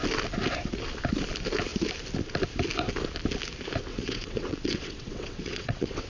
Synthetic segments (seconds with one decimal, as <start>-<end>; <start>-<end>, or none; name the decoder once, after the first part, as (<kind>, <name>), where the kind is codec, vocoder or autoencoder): 3.9-6.1 (vocoder, WaveNeXt)